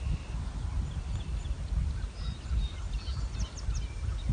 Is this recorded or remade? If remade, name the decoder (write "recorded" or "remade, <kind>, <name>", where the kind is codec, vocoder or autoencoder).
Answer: recorded